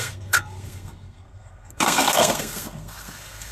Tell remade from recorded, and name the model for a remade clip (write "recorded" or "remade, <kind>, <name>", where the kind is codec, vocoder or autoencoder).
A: remade, codec, SNAC